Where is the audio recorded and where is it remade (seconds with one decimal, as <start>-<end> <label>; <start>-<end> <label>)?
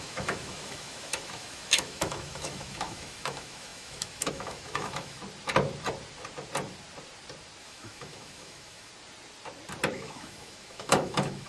0.0-5.2 remade; 5.2-7.6 recorded; 7.6-8.9 remade; 8.9-9.9 recorded; 9.9-11.5 remade